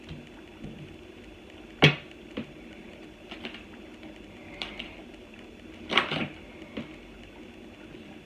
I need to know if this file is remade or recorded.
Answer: recorded